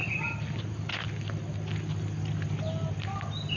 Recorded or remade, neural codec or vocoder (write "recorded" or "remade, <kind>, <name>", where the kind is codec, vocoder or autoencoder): recorded